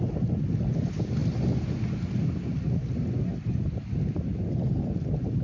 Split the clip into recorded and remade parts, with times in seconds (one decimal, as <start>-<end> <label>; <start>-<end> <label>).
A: 0.0-5.4 recorded